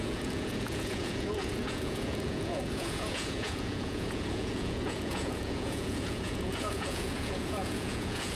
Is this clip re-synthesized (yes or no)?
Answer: yes